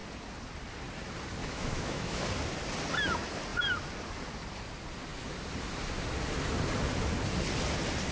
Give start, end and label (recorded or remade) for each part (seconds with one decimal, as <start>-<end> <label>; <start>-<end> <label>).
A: 0.0-1.4 recorded; 1.4-2.3 remade; 2.3-8.1 recorded